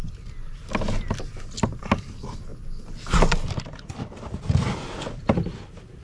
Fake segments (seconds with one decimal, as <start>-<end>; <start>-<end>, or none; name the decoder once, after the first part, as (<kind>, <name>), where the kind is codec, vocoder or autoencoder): none